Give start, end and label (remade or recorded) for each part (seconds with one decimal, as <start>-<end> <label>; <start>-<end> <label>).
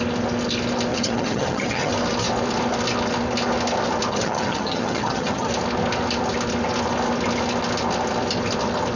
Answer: 0.0-0.9 recorded; 0.9-1.9 remade; 1.9-4.1 recorded; 4.1-5.5 remade; 5.5-9.0 recorded